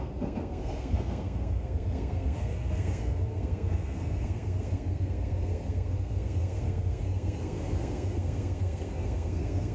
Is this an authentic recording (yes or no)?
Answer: no